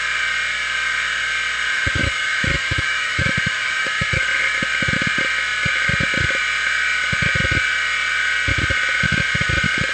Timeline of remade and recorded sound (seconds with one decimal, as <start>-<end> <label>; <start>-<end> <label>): 0.0-1.7 recorded; 1.7-4.2 remade; 4.2-9.9 recorded